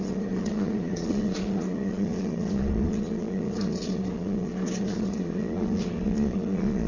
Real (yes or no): no